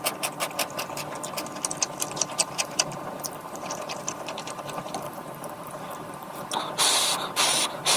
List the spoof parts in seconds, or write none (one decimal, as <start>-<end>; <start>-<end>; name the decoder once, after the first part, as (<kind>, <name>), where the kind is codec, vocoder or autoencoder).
2.4-6.5 (vocoder, BigVGAN v2)